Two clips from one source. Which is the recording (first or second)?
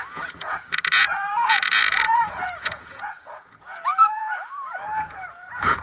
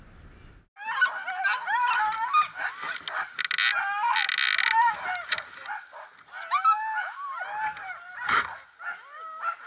second